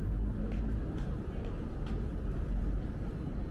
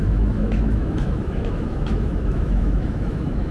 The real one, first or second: first